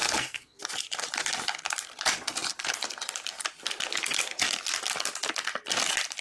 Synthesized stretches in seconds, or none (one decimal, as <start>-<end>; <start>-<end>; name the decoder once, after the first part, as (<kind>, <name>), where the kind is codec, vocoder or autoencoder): 0.0-0.6 (codec, SNAC)